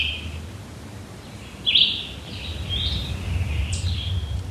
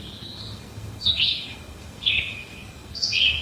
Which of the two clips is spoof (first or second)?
second